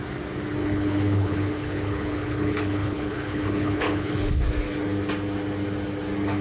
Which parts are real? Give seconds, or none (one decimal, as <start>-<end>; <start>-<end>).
0.0-0.6; 4.4-6.4